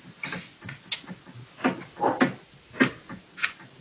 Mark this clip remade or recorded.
recorded